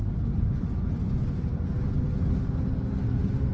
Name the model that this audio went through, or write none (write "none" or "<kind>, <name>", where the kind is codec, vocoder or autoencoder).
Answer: none